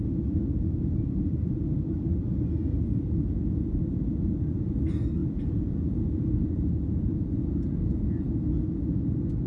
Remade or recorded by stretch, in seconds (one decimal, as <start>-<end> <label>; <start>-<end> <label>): 0.0-2.7 recorded; 2.7-3.8 remade; 3.8-5.2 recorded; 5.2-8.2 remade; 8.2-9.5 recorded